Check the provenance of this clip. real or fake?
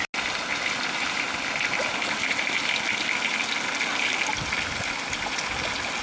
real